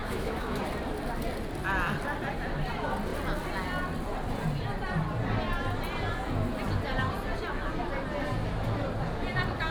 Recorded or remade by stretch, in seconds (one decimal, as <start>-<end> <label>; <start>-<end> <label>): 0.0-0.6 remade; 0.6-9.7 recorded